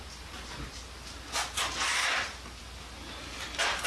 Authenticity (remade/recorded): recorded